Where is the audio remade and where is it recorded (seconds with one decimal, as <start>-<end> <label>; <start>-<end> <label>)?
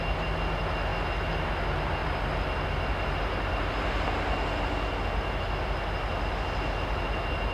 0.0-2.0 recorded; 2.0-2.6 remade; 2.6-7.5 recorded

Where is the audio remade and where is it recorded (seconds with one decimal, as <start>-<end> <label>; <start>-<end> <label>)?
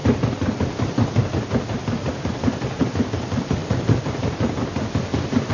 0.0-3.6 recorded; 3.6-4.4 remade; 4.4-5.5 recorded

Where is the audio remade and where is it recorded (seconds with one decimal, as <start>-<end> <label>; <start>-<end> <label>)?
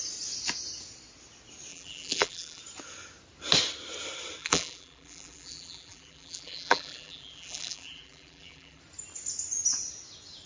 0.0-1.7 recorded; 1.7-2.6 remade; 2.6-4.4 recorded; 4.4-8.8 remade; 8.8-10.5 recorded